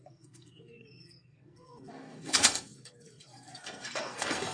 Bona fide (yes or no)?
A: no